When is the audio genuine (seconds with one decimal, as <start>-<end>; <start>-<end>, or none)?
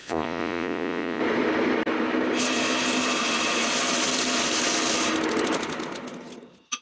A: 1.2-6.8